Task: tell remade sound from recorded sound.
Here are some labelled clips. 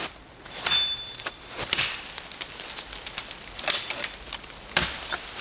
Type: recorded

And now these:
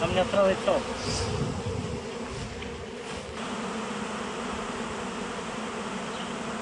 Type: recorded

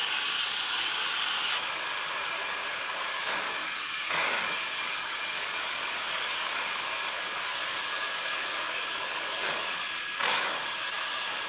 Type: remade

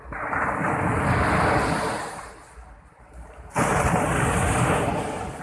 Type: recorded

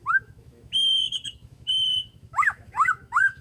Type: remade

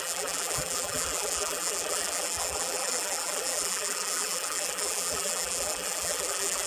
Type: remade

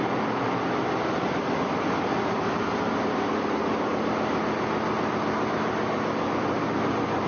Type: recorded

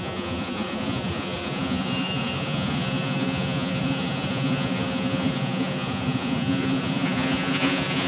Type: remade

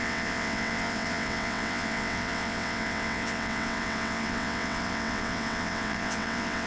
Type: remade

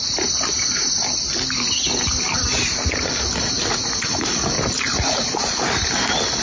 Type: recorded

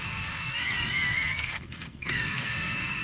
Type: remade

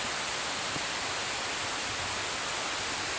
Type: recorded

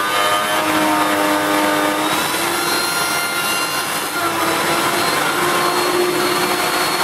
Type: recorded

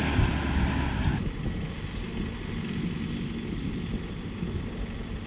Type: recorded